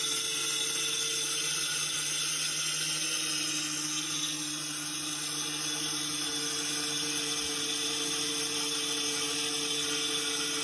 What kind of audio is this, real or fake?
real